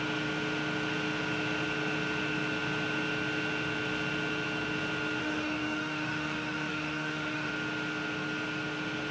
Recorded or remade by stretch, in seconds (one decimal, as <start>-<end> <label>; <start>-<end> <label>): 0.0-5.2 recorded; 5.2-7.5 remade; 7.5-9.1 recorded